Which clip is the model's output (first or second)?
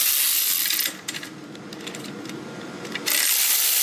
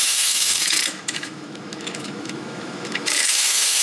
second